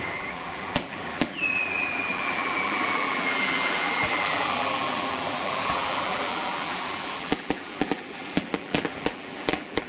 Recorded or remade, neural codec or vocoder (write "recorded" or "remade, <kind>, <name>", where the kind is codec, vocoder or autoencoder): remade, vocoder, BigVGAN v2